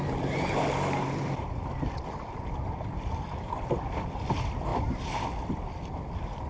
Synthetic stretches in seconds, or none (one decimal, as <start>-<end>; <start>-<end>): 0.0-4.7; 5.5-6.5